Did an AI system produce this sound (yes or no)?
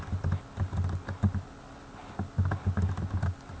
no